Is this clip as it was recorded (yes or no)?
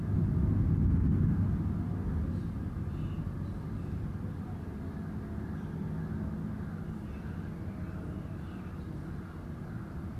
yes